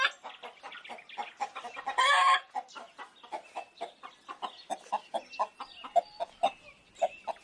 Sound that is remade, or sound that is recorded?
recorded